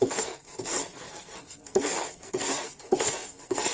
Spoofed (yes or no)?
yes